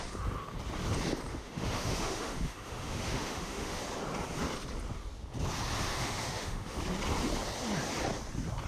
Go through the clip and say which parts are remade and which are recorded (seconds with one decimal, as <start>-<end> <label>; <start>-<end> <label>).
0.0-1.3 recorded; 1.3-3.8 remade; 3.8-5.9 recorded; 5.9-6.8 remade; 6.8-8.7 recorded